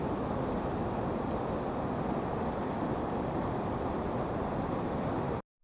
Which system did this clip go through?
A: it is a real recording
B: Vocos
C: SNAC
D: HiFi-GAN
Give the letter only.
A